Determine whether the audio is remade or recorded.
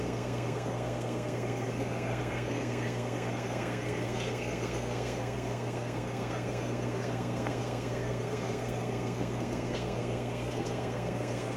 remade